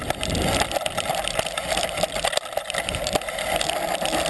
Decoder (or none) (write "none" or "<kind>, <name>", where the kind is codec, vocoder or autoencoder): vocoder, BigVGAN v2